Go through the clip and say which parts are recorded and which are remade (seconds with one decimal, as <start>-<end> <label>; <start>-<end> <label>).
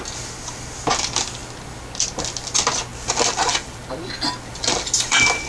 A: 0.0-2.9 recorded; 2.9-3.9 remade; 3.9-4.5 recorded; 4.5-5.5 remade